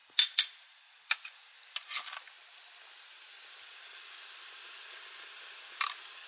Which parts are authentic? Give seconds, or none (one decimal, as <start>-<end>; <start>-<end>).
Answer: 0.0-6.3